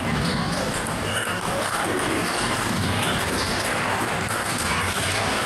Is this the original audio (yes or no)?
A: no